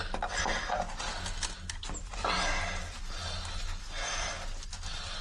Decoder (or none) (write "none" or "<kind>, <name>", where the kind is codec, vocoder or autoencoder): none